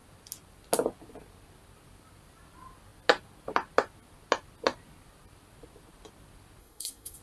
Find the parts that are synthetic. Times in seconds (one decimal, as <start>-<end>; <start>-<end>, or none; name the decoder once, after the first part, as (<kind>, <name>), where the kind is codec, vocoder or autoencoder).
6.6-7.2 (codec, SNAC)